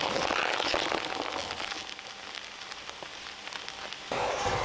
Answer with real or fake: real